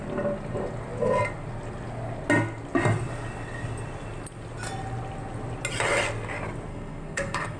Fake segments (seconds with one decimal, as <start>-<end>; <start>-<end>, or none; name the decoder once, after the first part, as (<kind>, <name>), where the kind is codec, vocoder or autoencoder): 6.7-7.6 (codec, SNAC)